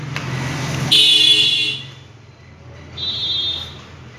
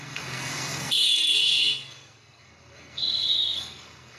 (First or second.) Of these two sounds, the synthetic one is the second